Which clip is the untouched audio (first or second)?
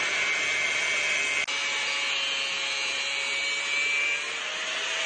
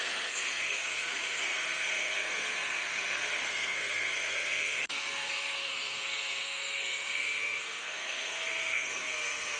first